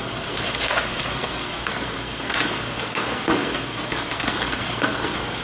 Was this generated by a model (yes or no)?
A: yes